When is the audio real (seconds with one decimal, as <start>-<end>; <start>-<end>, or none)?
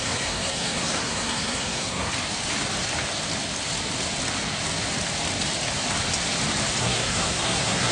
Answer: 2.1-6.8